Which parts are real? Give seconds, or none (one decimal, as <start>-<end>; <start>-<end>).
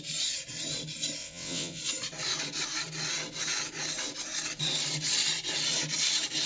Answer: 0.0-1.2; 1.8-6.5